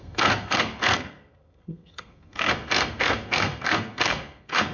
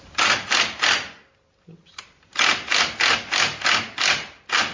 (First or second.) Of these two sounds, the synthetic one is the first